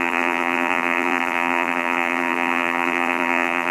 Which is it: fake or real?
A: fake